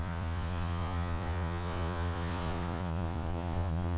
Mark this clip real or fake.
fake